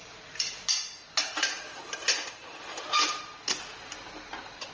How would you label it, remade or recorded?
recorded